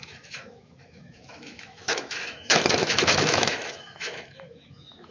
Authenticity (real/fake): fake